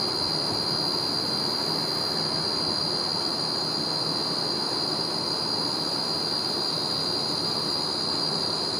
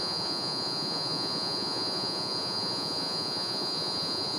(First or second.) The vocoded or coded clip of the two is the second